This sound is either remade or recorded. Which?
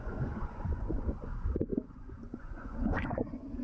remade